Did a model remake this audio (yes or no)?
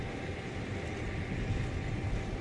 no